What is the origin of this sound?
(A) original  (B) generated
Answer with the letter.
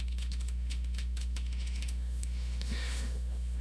B